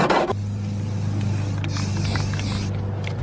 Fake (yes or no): no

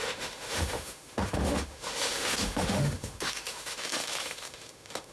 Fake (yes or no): yes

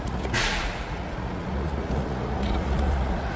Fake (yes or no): yes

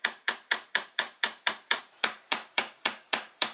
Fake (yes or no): yes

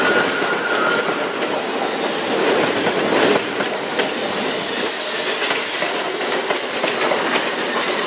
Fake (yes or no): no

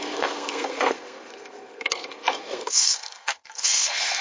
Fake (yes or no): yes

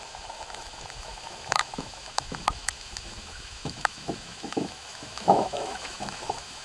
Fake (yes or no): yes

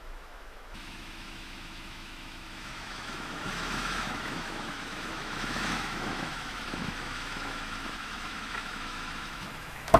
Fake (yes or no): yes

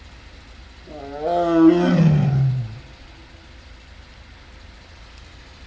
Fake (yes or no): no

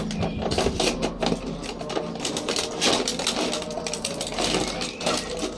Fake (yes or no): no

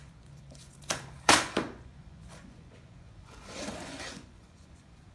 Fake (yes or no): yes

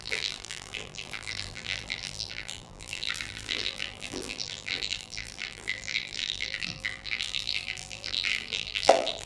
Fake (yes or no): yes